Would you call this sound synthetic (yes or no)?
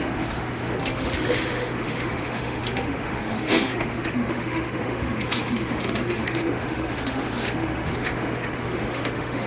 yes